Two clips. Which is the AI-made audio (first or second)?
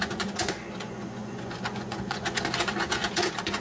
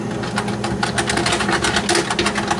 first